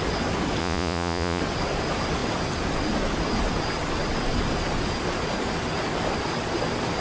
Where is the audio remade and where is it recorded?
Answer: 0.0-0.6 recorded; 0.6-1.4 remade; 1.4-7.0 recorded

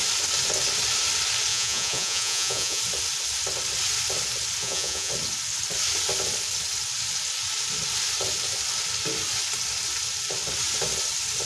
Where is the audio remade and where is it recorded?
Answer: 0.0-1.5 recorded; 1.5-2.8 remade; 2.8-4.6 recorded; 4.6-5.1 remade; 5.1-11.5 recorded